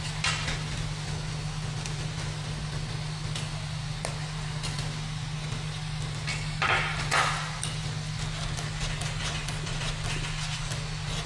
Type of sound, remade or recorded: recorded